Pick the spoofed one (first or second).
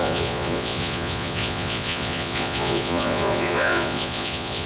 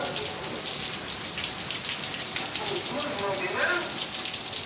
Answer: first